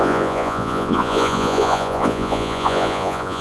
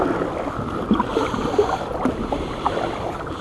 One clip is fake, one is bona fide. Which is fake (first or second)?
first